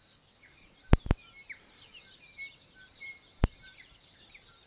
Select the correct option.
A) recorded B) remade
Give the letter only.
B